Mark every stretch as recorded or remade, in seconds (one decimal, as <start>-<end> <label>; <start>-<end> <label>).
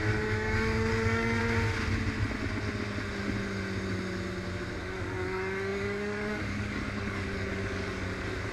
0.0-1.4 remade; 1.4-4.8 recorded; 4.8-8.5 remade